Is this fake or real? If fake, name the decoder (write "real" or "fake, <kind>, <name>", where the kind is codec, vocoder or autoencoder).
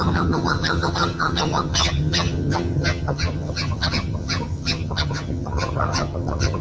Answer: fake, vocoder, HiFi-GAN